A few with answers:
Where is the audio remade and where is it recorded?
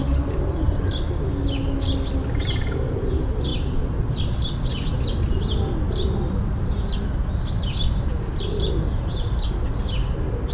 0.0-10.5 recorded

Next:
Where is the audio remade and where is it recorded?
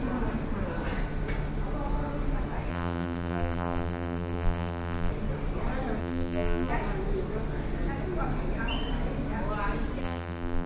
0.0-2.7 recorded; 2.7-5.1 remade; 5.1-6.0 recorded; 6.0-6.7 remade; 6.7-10.0 recorded; 10.0-10.7 remade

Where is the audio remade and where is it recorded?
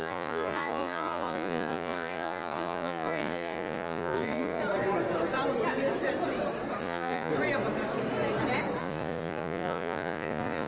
0.0-4.6 remade; 4.6-6.8 recorded; 6.8-7.3 remade; 7.3-8.8 recorded; 8.8-10.7 remade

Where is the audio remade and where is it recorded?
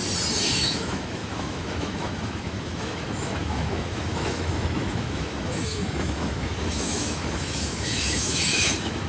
0.0-0.5 recorded; 0.5-9.1 remade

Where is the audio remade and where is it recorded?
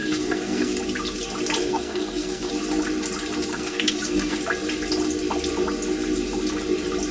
0.0-0.8 remade; 0.8-1.6 recorded; 1.6-2.5 remade; 2.5-3.5 recorded; 3.5-4.4 remade; 4.4-7.1 recorded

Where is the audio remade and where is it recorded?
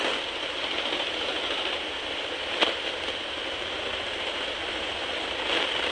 0.0-1.3 recorded; 1.3-1.8 remade; 1.8-5.9 recorded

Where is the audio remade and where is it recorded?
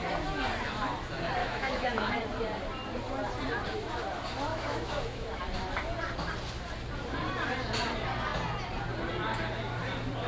0.0-1.4 recorded; 1.4-2.2 remade; 2.2-4.5 recorded; 4.5-5.4 remade; 5.4-10.3 recorded